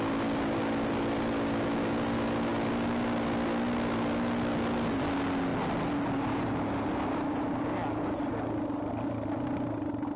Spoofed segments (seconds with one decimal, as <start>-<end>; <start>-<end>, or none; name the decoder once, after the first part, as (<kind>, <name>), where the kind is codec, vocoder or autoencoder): none